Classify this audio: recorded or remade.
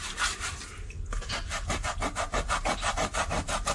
recorded